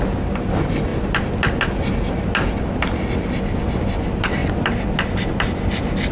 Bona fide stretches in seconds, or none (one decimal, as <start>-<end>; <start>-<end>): 0.0-6.1